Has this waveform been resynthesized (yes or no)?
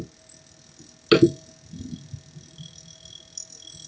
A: no